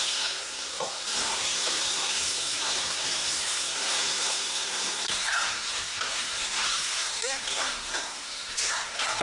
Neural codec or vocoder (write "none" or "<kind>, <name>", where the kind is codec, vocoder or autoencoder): codec, SNAC